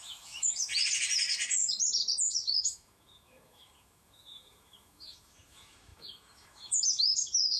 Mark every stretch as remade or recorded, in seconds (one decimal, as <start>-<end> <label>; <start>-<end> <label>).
0.0-0.7 remade; 0.7-2.3 recorded; 2.3-7.6 remade